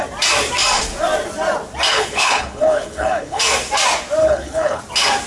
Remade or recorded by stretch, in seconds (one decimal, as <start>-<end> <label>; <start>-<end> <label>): 0.0-1.9 recorded; 1.9-3.4 remade; 3.4-4.2 recorded; 4.2-4.8 remade; 4.8-5.3 recorded